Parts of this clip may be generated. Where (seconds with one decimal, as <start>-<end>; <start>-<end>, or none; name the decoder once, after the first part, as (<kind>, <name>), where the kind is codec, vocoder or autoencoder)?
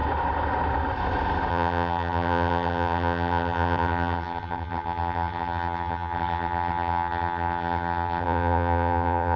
1.5-9.4 (vocoder, HiFi-GAN)